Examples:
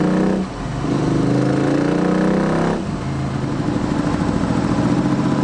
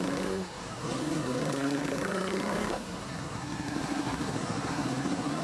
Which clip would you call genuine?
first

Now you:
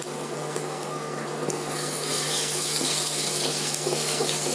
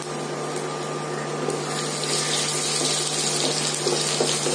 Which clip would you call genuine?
second